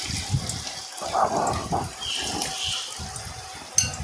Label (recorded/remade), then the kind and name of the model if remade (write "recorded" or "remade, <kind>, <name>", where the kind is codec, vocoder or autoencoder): recorded